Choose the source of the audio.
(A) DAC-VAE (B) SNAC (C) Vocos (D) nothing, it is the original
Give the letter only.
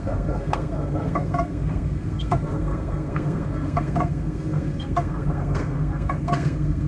B